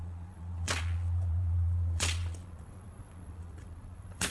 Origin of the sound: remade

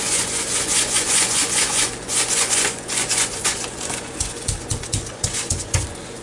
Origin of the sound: remade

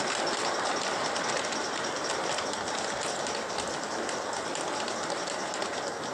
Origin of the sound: recorded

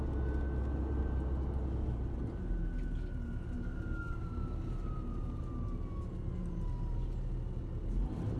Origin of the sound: recorded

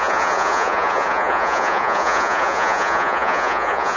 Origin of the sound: remade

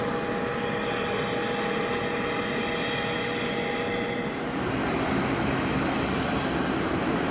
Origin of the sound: recorded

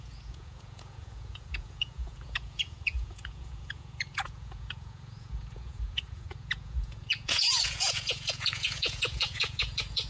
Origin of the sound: remade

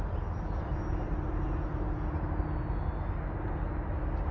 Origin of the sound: recorded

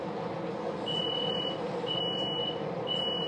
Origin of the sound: recorded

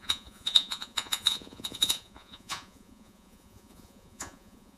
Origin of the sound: remade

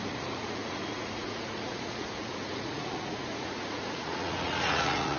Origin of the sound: remade